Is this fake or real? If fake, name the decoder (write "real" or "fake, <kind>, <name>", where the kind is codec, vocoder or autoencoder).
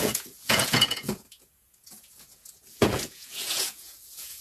fake, vocoder, Vocos